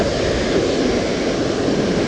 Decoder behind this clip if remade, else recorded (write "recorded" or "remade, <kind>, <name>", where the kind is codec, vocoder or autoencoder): recorded